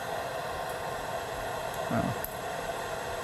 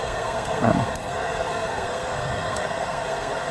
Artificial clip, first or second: second